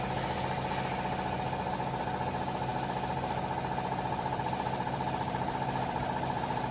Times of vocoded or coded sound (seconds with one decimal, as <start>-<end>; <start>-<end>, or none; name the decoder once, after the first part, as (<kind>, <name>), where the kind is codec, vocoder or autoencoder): 2.7-6.7 (vocoder, BigVGAN v2)